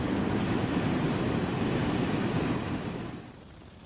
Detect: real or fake fake